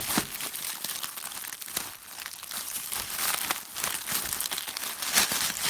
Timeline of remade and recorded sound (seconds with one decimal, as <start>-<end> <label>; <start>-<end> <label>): 0.0-5.7 remade